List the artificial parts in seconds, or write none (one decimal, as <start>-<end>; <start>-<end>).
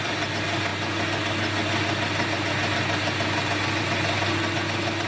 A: none